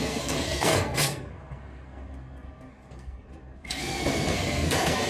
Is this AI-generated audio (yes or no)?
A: yes